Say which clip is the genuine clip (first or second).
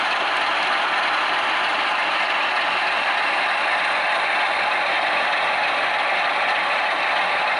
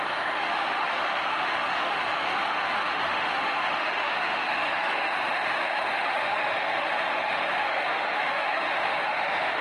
first